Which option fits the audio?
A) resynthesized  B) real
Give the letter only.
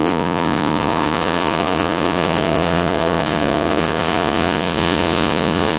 A